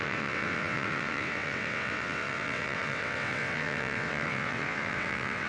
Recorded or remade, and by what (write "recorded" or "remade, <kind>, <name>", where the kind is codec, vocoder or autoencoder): remade, vocoder, WaveNeXt